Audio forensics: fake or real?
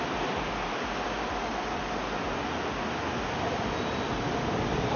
real